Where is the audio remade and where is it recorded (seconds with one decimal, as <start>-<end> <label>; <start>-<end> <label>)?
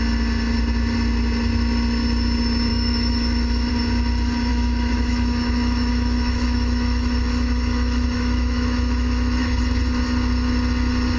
0.0-2.7 recorded; 2.7-3.7 remade; 3.7-4.5 recorded; 4.5-9.6 remade; 9.6-11.2 recorded